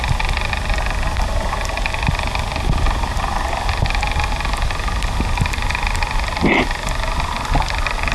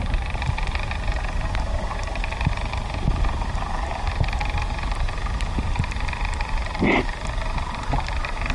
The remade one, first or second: second